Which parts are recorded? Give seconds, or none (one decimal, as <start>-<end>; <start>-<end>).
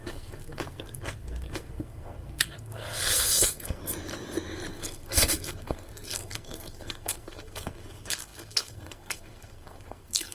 3.8-4.7